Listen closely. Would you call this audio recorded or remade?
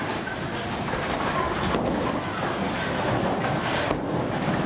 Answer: recorded